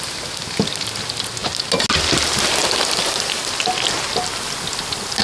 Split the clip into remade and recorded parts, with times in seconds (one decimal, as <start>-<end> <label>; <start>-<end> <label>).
0.0-5.2 recorded